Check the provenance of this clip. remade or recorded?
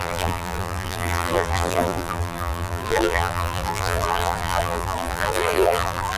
remade